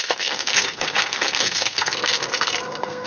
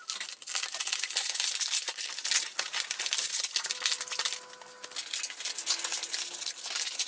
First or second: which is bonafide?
second